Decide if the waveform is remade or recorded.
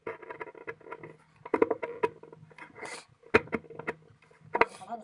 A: recorded